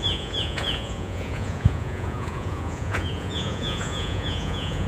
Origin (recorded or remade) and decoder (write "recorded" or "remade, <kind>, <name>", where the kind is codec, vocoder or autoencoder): remade, vocoder, Vocos